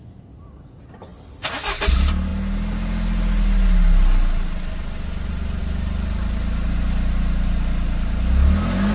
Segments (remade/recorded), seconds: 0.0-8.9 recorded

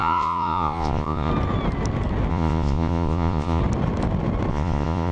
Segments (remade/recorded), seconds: 0.0-1.3 remade; 1.3-2.3 recorded; 2.3-3.6 remade; 3.6-4.5 recorded; 4.5-5.1 remade

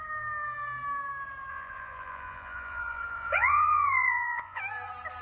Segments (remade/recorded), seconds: 0.0-1.5 recorded; 1.5-4.6 remade; 4.6-5.2 recorded

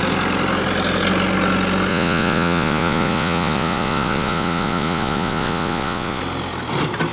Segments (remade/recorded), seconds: 0.0-1.9 recorded; 1.9-6.2 remade; 6.2-7.1 recorded